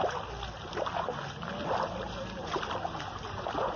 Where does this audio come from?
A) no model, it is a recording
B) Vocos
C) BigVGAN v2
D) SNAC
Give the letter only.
A